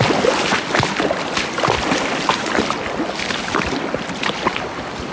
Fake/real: real